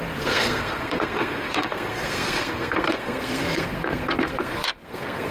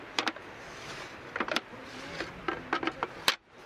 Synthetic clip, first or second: first